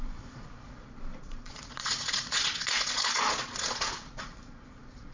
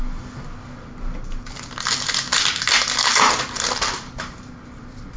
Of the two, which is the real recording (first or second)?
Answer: second